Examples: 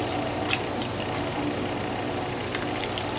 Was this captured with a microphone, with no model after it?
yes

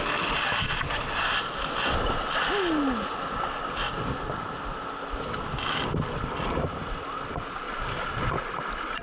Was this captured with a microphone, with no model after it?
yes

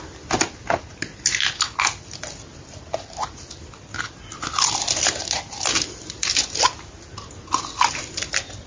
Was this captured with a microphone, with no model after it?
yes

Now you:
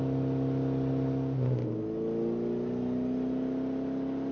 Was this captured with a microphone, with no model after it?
yes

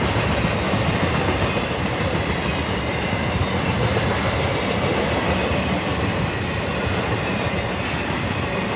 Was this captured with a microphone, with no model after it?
yes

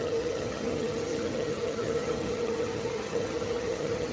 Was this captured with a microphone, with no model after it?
no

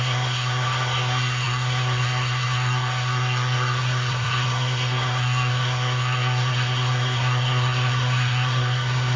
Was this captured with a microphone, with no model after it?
no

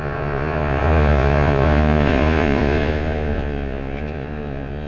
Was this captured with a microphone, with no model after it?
no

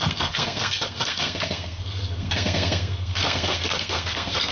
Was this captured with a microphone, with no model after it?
no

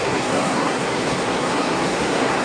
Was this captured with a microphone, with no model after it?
no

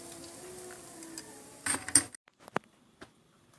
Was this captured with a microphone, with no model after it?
yes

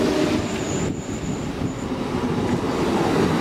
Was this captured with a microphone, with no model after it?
yes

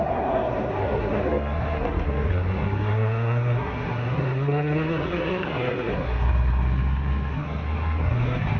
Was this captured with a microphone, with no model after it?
no